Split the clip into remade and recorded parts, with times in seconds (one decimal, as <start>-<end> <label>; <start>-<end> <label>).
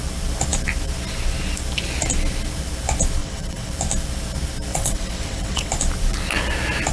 0.0-3.2 recorded; 3.2-3.7 remade; 3.7-4.7 recorded; 4.7-5.7 remade; 5.7-6.9 recorded